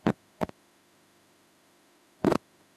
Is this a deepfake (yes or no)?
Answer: yes